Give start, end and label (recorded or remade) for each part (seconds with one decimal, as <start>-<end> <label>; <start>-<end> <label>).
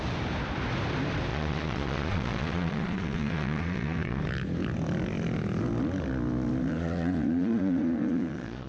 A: 0.0-1.3 recorded; 1.3-4.2 remade; 4.2-6.7 recorded; 6.7-8.7 remade